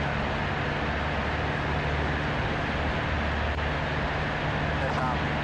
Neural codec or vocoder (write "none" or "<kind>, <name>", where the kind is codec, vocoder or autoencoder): none